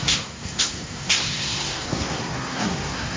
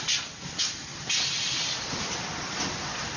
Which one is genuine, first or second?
second